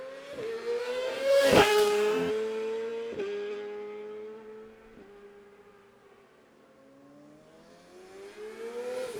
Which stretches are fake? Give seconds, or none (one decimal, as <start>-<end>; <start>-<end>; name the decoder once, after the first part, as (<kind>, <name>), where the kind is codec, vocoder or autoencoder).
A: 0.8-2.3 (codec, DAC)